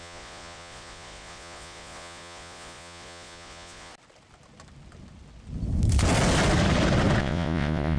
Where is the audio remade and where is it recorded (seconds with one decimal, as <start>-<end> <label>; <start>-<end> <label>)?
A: 0.0-3.9 remade; 3.9-7.2 recorded; 7.2-8.0 remade